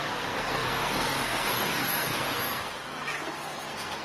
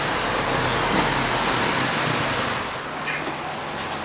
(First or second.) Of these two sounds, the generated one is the first